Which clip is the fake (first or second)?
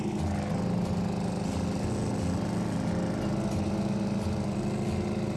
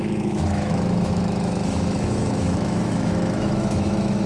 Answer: second